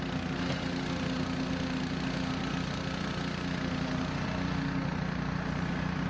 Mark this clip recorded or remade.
recorded